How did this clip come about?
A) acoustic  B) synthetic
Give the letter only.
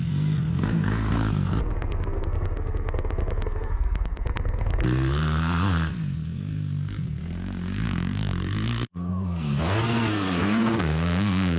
B